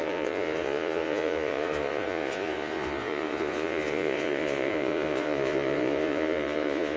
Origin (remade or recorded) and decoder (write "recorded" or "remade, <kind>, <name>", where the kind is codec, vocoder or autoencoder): remade, vocoder, Vocos